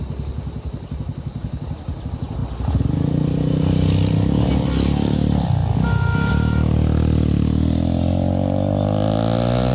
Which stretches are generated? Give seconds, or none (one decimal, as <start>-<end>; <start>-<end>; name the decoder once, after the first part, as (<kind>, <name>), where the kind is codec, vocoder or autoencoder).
none